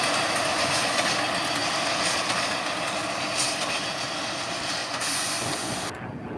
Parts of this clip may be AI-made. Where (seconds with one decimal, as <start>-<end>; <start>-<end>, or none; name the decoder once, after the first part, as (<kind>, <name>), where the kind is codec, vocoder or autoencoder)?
0.5-1.1 (vocoder, Vocos); 4.8-5.8